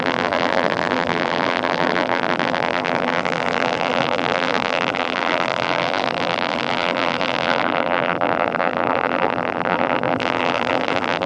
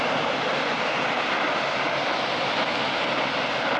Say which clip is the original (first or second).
second